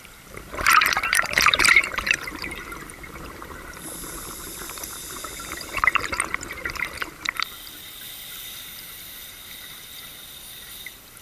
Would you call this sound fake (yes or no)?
yes